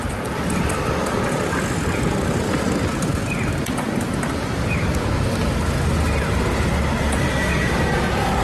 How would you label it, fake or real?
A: real